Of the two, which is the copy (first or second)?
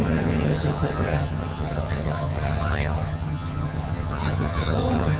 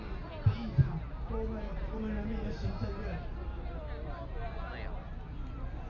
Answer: first